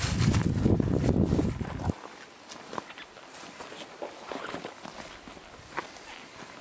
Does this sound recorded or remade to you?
recorded